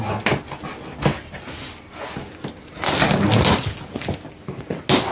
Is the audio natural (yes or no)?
yes